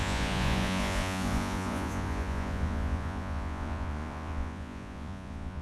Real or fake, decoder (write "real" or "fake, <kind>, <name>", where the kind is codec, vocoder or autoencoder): fake, vocoder, Vocos